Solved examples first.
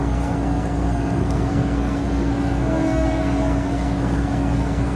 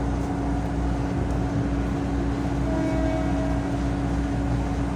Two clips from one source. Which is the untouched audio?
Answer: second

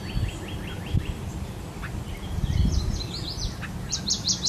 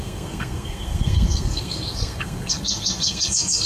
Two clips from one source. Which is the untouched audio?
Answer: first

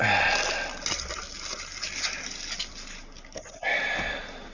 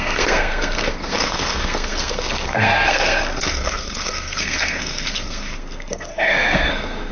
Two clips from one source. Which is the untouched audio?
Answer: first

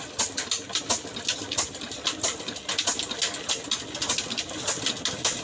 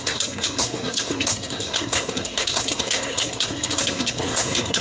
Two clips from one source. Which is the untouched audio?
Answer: first